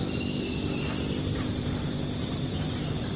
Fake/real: fake